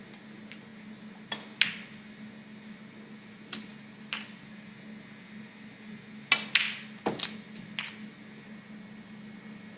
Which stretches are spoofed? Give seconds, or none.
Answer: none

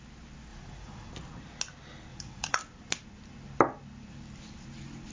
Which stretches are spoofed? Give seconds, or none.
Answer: 0.5-1.1 (vocoder, Vocos); 2.1-2.6

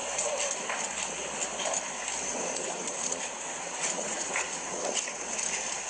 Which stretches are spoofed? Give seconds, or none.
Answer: 2.3-5.1 (vocoder, Vocos)